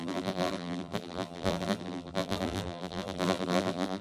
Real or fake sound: fake